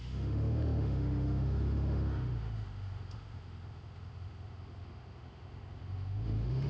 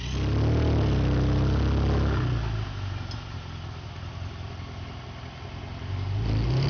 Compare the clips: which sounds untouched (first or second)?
second